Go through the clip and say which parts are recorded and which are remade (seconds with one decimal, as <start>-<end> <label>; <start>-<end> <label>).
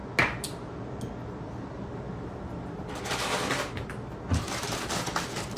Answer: 0.0-5.6 recorded